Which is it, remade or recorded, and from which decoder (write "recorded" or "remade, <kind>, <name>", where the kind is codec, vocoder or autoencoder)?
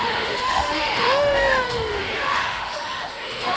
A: remade, autoencoder, DAC-VAE